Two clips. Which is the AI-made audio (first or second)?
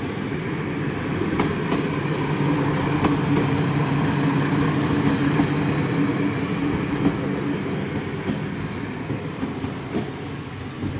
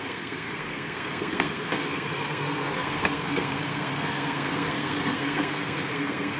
second